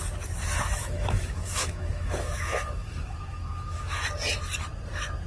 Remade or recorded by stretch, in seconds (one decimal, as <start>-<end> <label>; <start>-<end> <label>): 0.0-0.8 recorded; 0.8-4.0 remade; 4.0-5.3 recorded